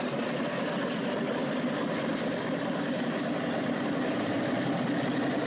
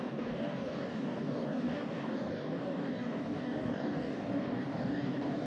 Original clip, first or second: first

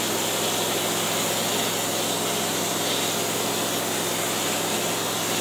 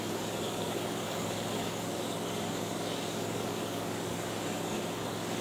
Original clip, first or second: first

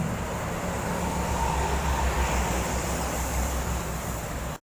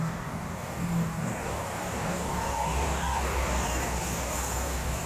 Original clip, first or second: first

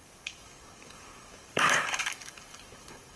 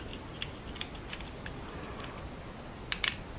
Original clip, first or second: second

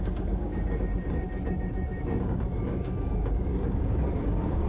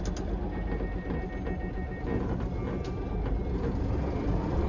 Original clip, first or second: second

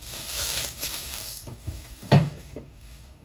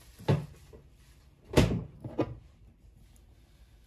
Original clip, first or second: second